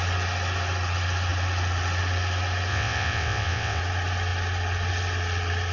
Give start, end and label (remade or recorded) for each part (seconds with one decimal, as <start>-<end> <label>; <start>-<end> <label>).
0.0-2.7 recorded; 2.7-3.8 remade; 3.8-5.7 recorded